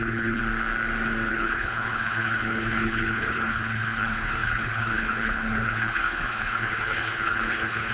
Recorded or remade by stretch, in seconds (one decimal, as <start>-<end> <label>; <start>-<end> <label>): 0.0-0.4 remade; 0.4-1.3 recorded; 1.3-7.9 remade